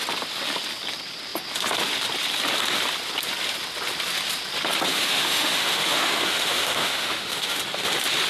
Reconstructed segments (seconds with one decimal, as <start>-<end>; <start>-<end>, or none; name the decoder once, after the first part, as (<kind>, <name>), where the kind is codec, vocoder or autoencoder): 4.9-7.6 (autoencoder, DAC-VAE)

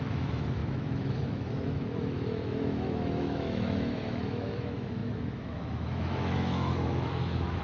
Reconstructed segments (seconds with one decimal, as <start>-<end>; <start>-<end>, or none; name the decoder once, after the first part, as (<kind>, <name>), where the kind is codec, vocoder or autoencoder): 0.0-7.6 (autoencoder, DAC-VAE)

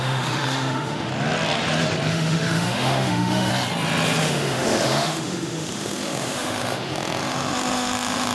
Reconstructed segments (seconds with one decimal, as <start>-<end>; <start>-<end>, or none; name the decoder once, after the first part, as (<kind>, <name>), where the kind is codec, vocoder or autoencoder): 0.0-1.1 (autoencoder, DAC-VAE); 2.1-3.5; 4.2-8.3

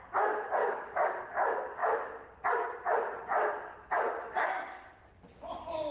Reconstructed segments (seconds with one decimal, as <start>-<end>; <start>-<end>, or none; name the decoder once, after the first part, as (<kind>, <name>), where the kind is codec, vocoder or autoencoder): 0.6-1.1 (autoencoder, DAC-VAE)